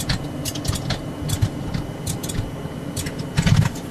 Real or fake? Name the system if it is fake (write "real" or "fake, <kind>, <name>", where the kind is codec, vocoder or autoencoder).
real